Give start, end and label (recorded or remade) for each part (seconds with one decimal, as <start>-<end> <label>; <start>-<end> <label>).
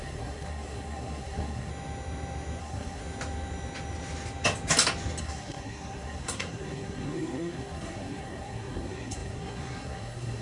0.0-1.7 remade; 1.7-2.6 recorded; 2.6-3.0 remade; 3.0-5.2 recorded; 5.2-10.4 remade